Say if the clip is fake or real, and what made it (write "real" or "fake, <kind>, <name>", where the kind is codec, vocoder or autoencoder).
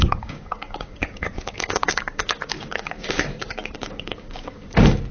fake, codec, DAC